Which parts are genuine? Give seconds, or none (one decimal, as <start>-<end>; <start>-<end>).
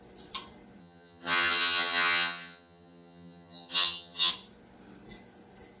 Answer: 0.0-0.8; 4.3-5.8